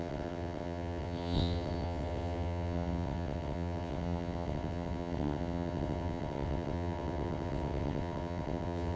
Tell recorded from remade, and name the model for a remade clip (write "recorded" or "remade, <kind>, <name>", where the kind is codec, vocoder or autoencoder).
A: remade, vocoder, WaveNeXt